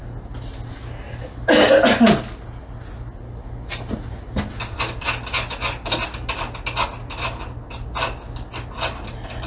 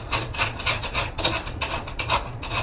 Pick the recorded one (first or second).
first